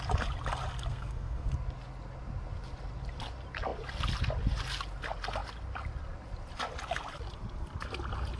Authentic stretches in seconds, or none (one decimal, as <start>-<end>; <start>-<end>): 0.0-0.9; 1.5-8.4